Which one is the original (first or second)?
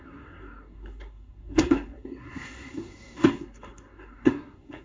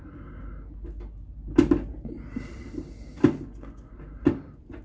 second